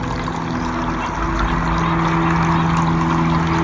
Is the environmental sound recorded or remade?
recorded